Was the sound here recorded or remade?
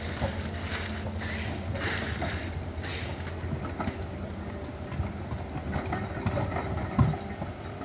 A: recorded